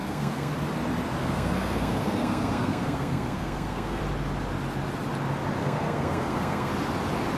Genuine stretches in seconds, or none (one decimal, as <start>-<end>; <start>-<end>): 0.5-1.2; 4.0-5.6; 6.7-7.4